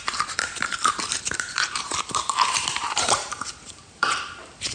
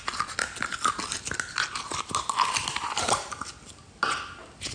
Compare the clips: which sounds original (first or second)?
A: second